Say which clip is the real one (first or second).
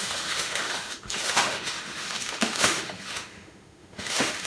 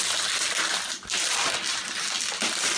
second